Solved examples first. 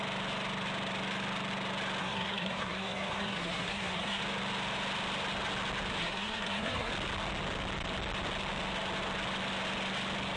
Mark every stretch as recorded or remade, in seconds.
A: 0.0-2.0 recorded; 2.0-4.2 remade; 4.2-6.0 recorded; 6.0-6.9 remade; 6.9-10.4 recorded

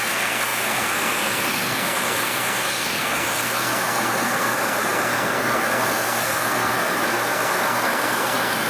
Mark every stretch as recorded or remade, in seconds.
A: 0.0-8.7 remade

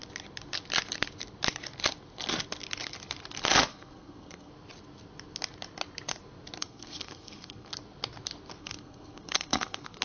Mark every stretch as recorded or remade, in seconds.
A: 0.0-3.7 recorded; 3.7-4.5 remade; 4.5-6.6 recorded; 6.6-7.7 remade; 7.7-8.6 recorded; 8.6-10.0 remade

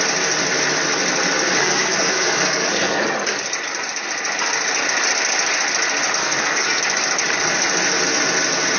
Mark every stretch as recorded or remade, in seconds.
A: 0.0-1.6 recorded; 1.6-3.0 remade; 3.0-6.2 recorded; 6.2-6.8 remade; 6.8-8.8 recorded

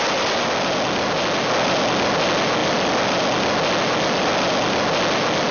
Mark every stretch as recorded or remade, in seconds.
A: 0.0-5.5 recorded

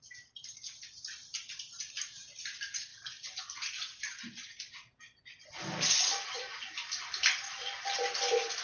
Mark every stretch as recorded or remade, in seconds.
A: 0.0-8.6 recorded

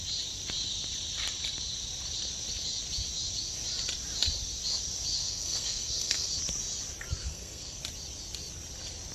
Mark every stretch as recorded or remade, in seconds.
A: 0.0-5.2 recorded; 5.2-6.3 remade; 6.3-7.2 recorded; 7.2-7.8 remade; 7.8-9.1 recorded